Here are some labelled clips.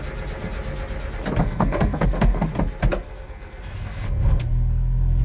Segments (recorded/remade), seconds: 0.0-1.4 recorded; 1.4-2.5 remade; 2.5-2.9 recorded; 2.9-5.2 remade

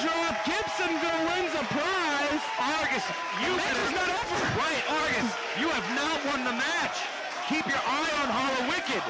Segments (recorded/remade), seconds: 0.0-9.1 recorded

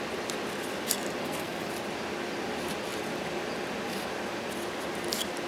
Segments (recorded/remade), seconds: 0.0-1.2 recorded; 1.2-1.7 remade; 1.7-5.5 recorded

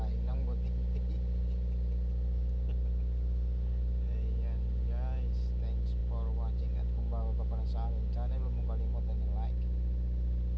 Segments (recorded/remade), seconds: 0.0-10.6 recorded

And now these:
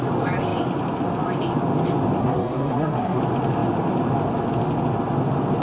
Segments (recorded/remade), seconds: 0.0-2.2 recorded; 2.2-3.2 remade; 3.2-5.6 recorded

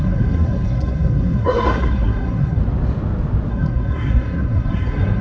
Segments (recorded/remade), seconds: 0.0-2.6 remade; 2.6-3.5 recorded; 3.5-5.2 remade

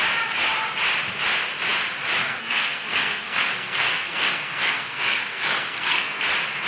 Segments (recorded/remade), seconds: 0.0-2.2 recorded; 2.2-6.2 remade; 6.2-6.7 recorded